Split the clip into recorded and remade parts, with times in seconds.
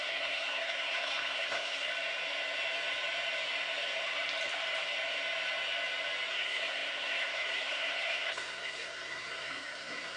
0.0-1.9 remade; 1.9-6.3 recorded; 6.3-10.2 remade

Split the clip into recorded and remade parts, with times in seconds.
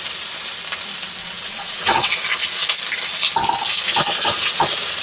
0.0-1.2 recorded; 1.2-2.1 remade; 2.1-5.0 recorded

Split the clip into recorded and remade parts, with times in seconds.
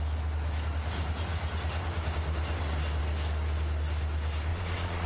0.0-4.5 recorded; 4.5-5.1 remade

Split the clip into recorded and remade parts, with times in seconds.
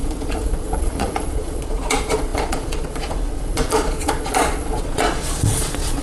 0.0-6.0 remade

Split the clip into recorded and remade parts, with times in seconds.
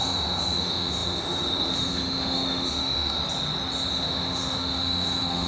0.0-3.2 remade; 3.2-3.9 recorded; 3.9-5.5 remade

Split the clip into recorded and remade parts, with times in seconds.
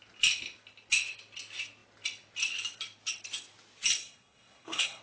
0.0-4.0 recorded; 4.0-5.0 remade